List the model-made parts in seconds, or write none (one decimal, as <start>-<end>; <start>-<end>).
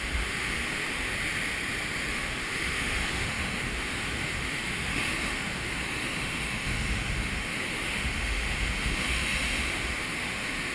0.0-1.1; 2.1-10.7